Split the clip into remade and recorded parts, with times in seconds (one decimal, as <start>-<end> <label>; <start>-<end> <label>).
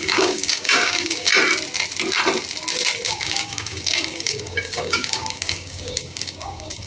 0.0-1.3 remade; 1.3-3.1 recorded; 3.1-6.9 remade